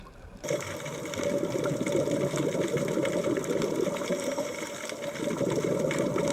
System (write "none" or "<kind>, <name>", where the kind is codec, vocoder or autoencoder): none